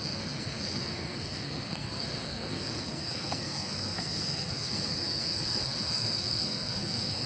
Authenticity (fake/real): fake